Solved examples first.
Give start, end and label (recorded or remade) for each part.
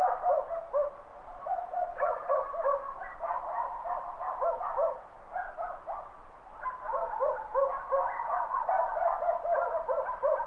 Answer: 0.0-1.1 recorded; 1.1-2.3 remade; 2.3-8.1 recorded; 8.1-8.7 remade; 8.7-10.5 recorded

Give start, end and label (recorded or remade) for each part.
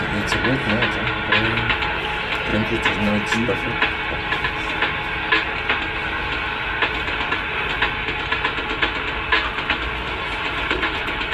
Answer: 0.0-2.5 recorded; 2.5-3.1 remade; 3.1-11.3 recorded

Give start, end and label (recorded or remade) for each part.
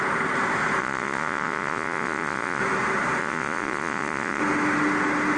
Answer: 0.0-0.8 recorded; 0.8-2.6 remade; 2.6-3.2 recorded; 3.2-4.4 remade; 4.4-5.4 recorded